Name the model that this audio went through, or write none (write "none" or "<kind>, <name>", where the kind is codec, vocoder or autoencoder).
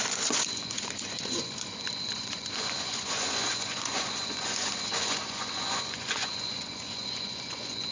vocoder, Vocos